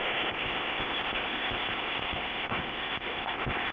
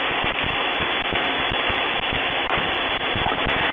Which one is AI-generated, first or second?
first